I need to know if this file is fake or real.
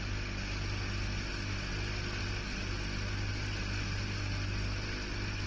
real